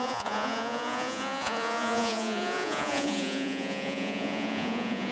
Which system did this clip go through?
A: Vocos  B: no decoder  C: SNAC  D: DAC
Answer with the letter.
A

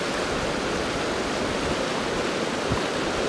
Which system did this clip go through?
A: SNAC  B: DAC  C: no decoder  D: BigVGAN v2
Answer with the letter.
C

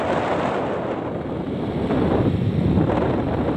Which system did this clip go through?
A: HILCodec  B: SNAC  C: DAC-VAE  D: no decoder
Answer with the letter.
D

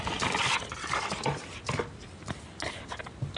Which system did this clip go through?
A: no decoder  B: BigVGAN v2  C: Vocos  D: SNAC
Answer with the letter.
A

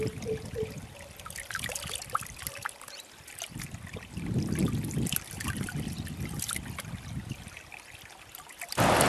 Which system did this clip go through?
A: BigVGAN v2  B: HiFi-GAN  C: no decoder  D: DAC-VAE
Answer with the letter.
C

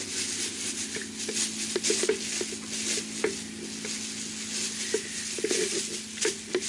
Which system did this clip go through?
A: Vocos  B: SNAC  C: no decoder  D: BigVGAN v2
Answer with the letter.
C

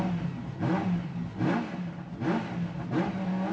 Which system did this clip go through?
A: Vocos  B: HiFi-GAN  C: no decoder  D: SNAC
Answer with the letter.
C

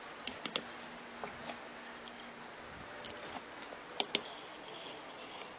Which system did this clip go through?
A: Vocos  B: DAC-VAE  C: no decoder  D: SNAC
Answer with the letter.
C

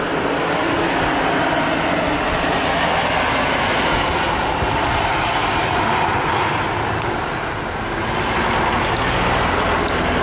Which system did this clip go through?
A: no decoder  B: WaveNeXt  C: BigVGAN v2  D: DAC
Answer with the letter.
A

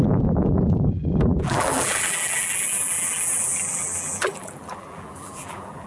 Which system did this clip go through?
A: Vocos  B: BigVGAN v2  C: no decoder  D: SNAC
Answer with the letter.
B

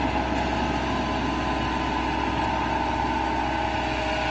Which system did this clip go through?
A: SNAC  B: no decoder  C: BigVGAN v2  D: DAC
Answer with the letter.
B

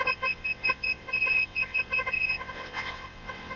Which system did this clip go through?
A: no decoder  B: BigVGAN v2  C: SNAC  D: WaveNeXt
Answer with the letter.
D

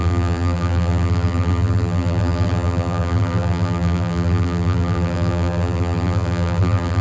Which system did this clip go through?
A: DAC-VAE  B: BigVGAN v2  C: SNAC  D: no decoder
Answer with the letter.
B